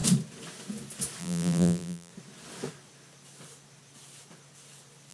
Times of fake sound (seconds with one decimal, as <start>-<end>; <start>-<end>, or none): 1.2-2.1

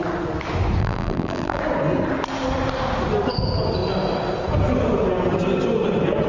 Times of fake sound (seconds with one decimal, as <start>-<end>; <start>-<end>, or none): 0.8-1.6

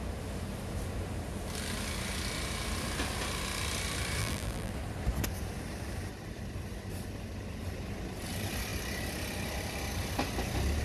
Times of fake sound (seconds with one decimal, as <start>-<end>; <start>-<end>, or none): 4.2-4.7

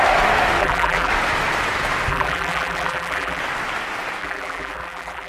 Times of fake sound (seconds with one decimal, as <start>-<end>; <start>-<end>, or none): 0.6-1.1; 2.1-3.4; 4.2-5.3

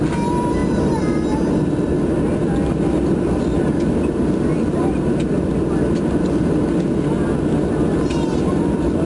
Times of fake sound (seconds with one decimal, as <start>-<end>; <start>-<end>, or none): 0.0-9.0